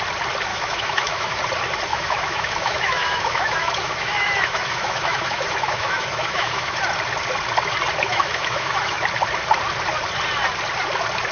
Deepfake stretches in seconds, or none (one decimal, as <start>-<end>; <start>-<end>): 0.5-1.4; 1.9-6.8; 8.1-9.0